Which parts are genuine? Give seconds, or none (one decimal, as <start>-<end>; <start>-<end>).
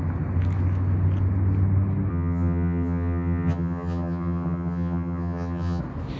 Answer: 0.0-2.1; 5.8-6.2